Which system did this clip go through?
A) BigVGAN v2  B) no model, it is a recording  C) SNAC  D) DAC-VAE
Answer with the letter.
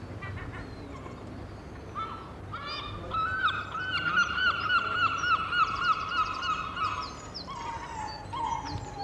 B